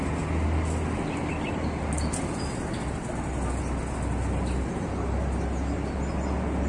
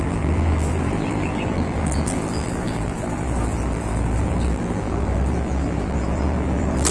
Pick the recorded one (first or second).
first